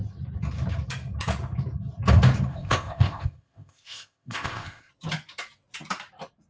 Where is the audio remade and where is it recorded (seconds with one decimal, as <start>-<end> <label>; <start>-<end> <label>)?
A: 0.0-2.5 recorded; 2.5-4.9 remade; 4.9-6.5 recorded